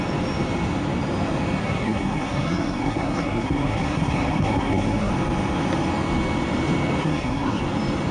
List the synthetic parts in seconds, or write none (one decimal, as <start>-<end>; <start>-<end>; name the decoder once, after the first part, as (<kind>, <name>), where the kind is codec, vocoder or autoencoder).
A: 1.6-5.1 (codec, SNAC); 7.0-7.6